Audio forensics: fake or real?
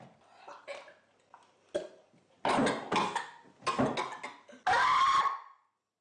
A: real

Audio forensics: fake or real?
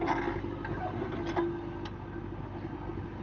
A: real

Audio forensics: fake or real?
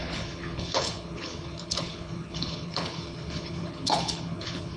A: fake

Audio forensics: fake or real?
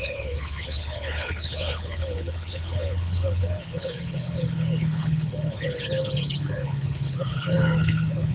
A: fake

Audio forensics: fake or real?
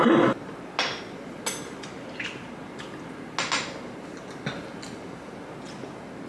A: real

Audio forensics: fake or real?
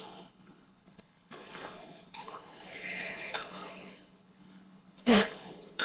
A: fake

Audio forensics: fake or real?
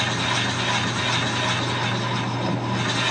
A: real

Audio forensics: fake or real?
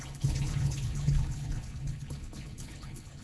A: fake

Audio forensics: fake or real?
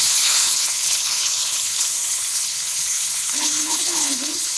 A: fake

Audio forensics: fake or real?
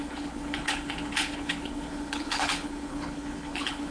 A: fake